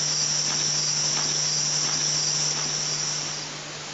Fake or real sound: real